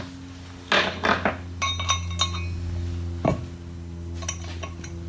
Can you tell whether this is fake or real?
real